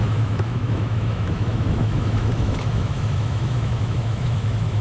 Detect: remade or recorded remade